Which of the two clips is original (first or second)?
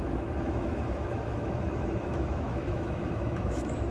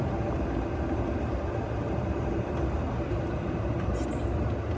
second